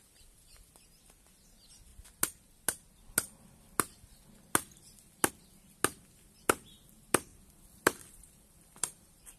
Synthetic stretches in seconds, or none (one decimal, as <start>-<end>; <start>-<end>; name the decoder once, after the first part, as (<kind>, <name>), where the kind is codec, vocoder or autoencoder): 7.3-9.4 (vocoder, BigVGAN v2)